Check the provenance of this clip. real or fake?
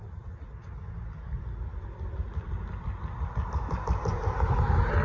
real